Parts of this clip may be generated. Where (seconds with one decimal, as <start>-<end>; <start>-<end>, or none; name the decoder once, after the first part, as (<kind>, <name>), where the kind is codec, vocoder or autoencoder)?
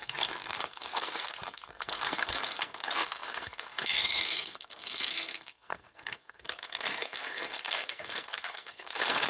0.0-9.3 (codec, SNAC)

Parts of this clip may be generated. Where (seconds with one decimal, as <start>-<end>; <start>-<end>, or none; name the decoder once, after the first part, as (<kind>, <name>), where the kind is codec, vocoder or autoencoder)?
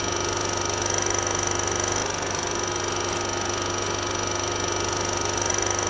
none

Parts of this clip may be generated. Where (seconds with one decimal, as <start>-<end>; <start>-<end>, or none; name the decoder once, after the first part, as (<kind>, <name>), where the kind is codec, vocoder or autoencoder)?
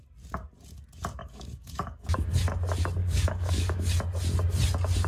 1.2-2.3 (codec, DAC); 3.0-3.9